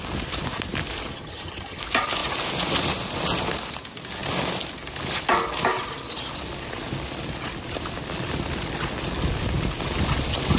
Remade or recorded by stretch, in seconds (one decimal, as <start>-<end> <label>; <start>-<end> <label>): 0.0-1.1 recorded; 1.1-1.8 remade; 1.8-10.6 recorded